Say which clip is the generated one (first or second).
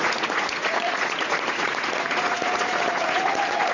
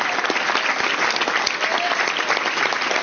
first